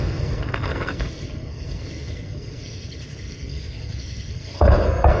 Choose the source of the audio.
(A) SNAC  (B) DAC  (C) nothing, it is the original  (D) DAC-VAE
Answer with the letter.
A